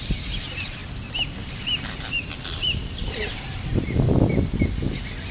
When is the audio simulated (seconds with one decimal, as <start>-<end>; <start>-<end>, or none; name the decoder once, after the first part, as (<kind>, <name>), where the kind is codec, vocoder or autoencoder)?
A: 0.8-4.0 (vocoder, BigVGAN v2)